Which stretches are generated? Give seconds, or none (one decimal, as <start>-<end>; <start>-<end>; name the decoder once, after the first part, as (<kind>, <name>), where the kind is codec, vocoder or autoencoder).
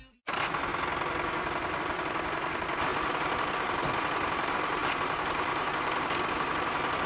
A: 0.0-0.7 (vocoder, BigVGAN v2); 1.8-2.9; 3.5-4.8